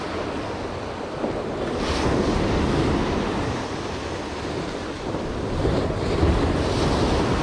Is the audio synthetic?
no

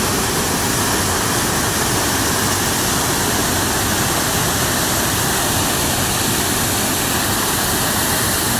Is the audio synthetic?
no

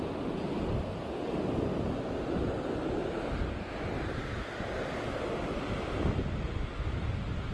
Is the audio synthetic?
no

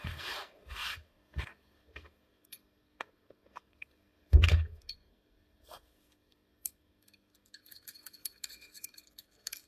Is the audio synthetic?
yes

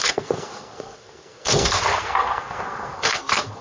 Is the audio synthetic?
yes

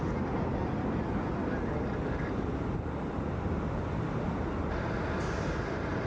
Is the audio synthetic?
no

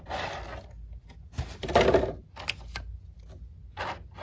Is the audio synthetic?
no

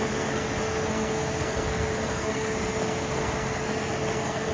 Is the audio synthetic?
yes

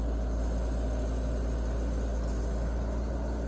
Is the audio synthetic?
no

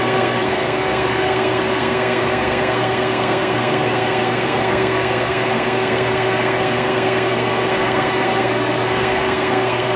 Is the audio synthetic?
yes